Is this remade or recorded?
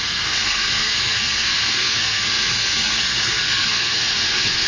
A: remade